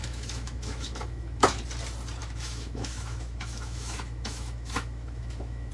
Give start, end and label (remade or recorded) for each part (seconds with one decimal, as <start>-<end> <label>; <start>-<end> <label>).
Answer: 0.0-1.6 remade; 1.6-2.2 recorded; 2.2-5.7 remade